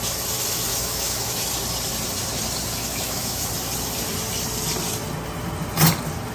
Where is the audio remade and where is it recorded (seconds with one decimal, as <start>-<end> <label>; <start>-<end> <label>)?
0.0-0.7 recorded; 0.7-1.4 remade; 1.4-2.9 recorded; 2.9-3.5 remade; 3.5-6.3 recorded